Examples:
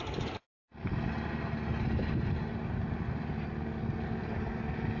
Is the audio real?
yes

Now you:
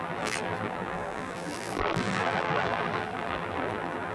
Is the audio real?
no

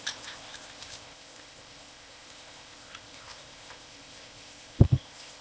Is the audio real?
no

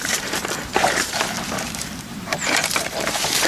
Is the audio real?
no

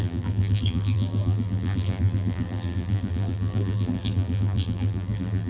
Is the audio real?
no